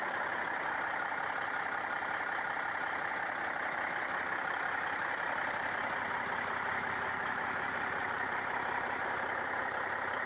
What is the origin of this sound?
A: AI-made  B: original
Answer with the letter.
B